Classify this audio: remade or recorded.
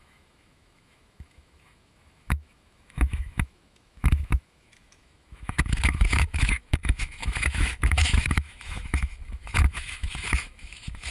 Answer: remade